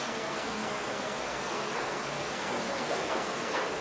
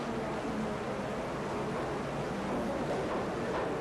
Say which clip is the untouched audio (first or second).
second